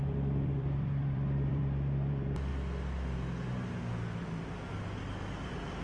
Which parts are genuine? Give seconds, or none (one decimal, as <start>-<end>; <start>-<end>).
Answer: 1.6-2.1; 2.5-4.7

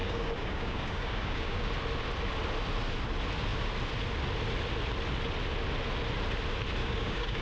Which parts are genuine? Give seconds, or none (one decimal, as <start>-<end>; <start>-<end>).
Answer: 1.7-6.8

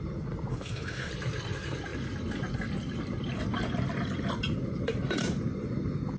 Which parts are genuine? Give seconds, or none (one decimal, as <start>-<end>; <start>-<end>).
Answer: 0.0-0.5; 1.1-6.2

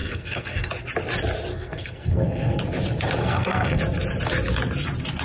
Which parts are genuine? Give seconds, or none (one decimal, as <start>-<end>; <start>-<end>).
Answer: 0.7-1.5; 2.6-3.2; 3.8-5.2

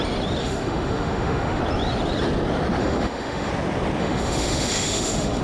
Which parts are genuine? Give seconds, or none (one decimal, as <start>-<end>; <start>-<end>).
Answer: 0.0-0.4; 1.6-2.8; 3.5-4.0